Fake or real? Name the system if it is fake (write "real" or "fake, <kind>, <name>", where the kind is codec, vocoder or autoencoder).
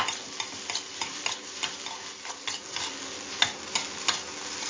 real